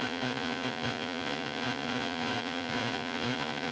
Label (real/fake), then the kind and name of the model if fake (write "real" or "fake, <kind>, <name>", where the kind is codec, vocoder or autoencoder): fake, vocoder, Vocos